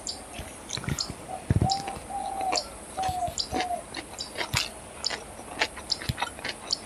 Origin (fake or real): real